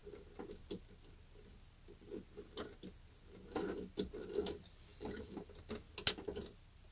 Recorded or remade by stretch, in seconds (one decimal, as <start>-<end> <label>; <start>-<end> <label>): 0.0-4.9 recorded; 4.9-5.6 remade; 5.6-6.9 recorded